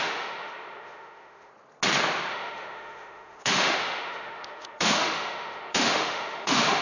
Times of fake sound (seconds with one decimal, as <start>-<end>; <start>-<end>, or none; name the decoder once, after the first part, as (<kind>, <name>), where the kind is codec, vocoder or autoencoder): 0.0-1.5 (autoencoder, DAC-VAE); 2.3-6.8